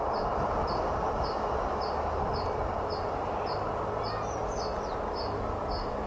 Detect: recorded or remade recorded